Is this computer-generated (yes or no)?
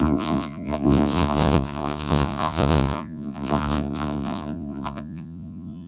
yes